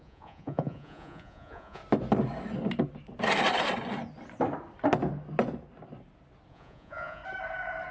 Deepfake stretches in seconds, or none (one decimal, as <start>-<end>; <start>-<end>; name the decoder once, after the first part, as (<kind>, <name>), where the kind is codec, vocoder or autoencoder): 0.0-1.8 (vocoder, Vocos); 6.5-7.2